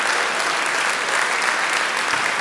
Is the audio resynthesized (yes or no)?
no